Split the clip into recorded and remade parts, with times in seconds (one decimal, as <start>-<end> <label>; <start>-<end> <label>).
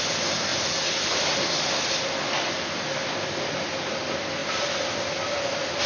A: 0.0-5.9 recorded